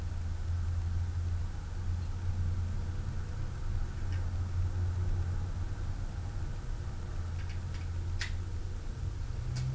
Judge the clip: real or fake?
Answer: real